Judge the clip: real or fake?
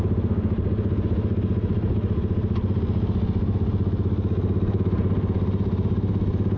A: real